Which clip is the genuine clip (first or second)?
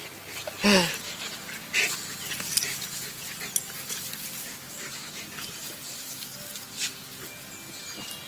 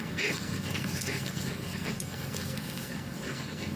first